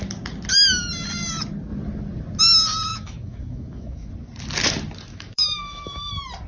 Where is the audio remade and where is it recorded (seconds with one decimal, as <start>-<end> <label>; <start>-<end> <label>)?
0.0-2.9 recorded; 2.9-4.1 remade; 4.1-5.1 recorded; 5.1-6.1 remade; 6.1-6.5 recorded